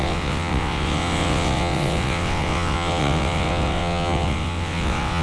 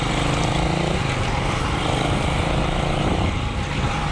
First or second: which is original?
second